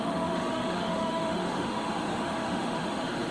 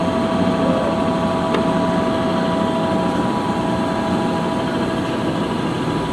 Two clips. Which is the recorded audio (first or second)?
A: second